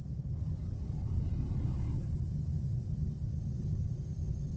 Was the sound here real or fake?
real